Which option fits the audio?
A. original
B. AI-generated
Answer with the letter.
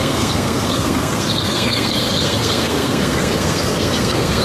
B